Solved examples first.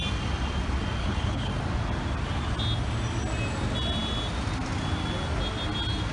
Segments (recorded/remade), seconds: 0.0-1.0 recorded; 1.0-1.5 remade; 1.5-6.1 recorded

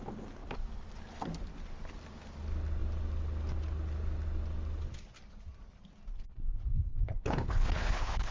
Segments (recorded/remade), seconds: 0.0-6.1 recorded; 6.1-8.3 remade

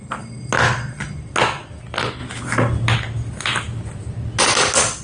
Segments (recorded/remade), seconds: 0.0-5.0 recorded

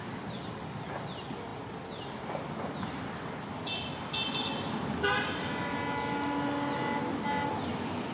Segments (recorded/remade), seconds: 0.0-8.1 recorded

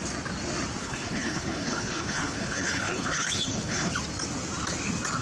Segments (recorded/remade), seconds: 0.0-0.8 recorded; 0.8-3.9 remade; 3.9-5.2 recorded

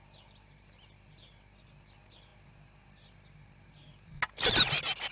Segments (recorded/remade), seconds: 0.0-5.1 recorded

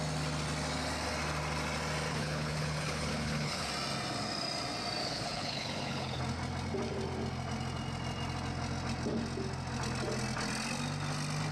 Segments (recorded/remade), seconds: 0.0-2.1 recorded; 2.1-3.7 remade; 3.7-5.0 recorded; 5.0-6.2 remade; 6.2-11.5 recorded

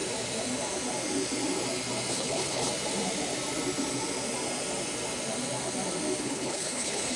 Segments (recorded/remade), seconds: 0.0-2.1 recorded; 2.1-2.7 remade; 2.7-6.2 recorded; 6.2-7.2 remade